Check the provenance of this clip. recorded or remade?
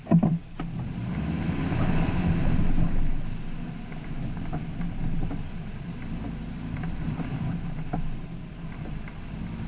recorded